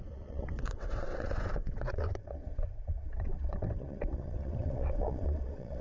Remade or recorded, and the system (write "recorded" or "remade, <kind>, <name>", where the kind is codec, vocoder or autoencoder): remade, vocoder, WaveNeXt